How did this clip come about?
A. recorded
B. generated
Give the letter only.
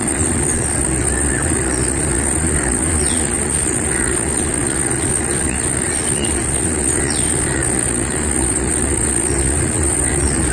B